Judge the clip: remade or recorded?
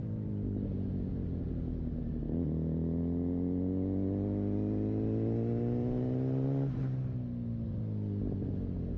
recorded